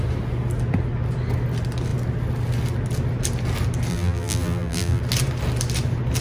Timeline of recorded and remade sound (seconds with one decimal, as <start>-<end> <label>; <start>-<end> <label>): 0.0-3.9 recorded; 3.9-5.0 remade; 5.0-6.2 recorded